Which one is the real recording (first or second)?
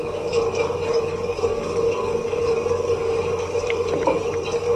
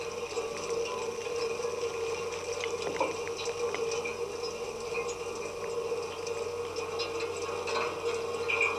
second